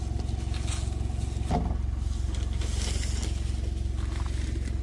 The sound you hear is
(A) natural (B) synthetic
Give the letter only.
A